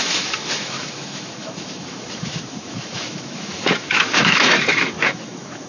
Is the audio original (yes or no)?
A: no